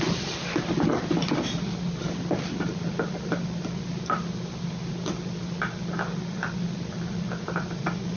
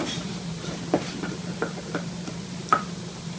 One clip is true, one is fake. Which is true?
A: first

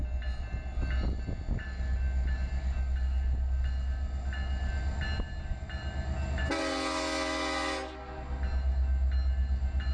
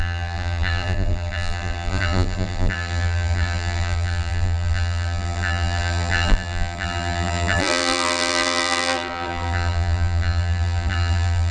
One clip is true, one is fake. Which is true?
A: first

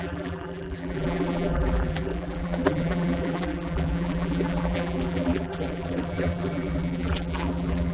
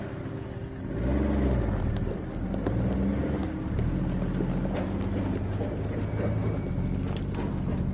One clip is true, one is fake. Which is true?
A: second